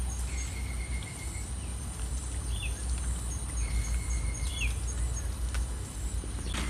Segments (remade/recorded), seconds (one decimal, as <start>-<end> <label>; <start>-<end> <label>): 0.0-6.7 recorded